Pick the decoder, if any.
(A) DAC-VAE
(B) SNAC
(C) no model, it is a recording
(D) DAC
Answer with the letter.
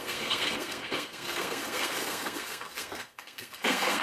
B